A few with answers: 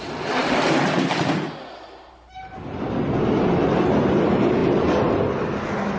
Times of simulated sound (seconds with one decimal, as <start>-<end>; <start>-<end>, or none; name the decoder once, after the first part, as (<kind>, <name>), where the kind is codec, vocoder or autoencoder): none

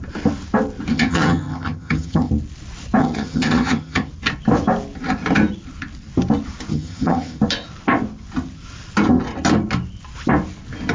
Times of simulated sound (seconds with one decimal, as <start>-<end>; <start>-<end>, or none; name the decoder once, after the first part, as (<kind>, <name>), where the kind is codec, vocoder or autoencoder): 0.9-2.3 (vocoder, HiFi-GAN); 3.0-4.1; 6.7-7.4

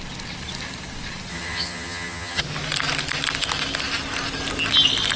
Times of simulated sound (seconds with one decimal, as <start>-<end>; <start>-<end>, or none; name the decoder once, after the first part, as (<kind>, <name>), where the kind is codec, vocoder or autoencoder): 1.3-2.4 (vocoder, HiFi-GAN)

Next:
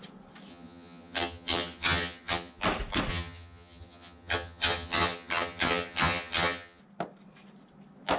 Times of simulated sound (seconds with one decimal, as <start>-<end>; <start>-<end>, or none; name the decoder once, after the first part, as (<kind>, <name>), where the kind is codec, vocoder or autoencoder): 0.5-2.6 (vocoder, HiFi-GAN); 3.1-6.8